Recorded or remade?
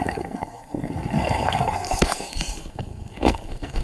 remade